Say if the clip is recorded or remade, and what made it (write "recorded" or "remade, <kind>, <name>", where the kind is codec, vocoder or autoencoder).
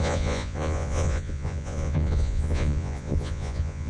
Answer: remade, vocoder, Vocos